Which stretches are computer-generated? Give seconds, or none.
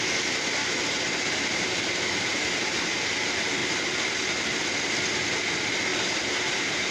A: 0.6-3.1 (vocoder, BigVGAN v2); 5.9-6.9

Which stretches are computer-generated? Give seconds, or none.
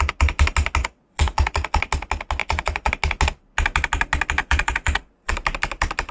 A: 0.8-1.8 (vocoder, Vocos); 2.4-2.9; 4.4-5.3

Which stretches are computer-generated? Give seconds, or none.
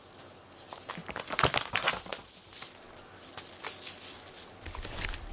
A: none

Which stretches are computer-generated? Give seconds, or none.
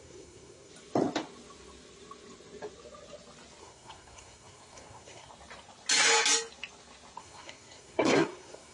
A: 0.0-0.7 (codec, SNAC); 3.6-5.3; 7.2-8.7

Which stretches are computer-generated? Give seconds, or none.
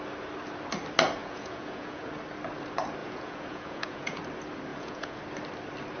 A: 1.2-2.1 (vocoder, Vocos); 3.0-4.2; 4.7-5.2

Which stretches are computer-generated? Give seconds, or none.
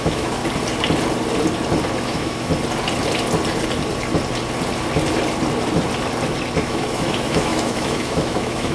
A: 0.0-0.4 (autoencoder, DAC-VAE); 2.0-2.5; 6.6-8.7